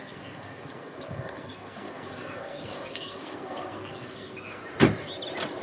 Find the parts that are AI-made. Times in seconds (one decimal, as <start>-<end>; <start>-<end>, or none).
0.0-4.6